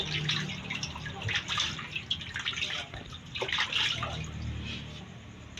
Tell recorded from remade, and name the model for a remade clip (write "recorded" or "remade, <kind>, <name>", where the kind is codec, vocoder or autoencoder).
recorded